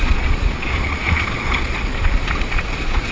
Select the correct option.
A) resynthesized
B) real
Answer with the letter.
A